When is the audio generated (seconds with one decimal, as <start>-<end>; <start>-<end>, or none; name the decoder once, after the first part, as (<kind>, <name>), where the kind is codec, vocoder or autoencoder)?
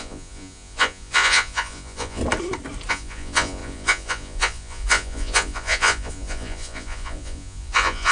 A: 0.0-2.2 (vocoder, Vocos); 2.9-8.1